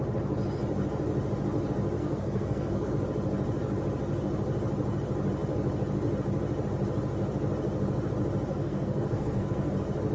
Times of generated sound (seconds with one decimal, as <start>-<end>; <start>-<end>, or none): 2.0-2.9; 8.5-9.7